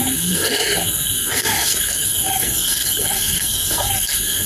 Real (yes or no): no